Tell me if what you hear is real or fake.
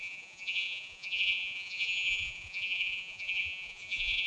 fake